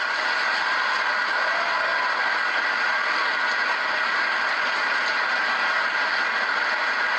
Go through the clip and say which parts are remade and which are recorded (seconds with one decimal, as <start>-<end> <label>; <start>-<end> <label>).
0.0-7.2 recorded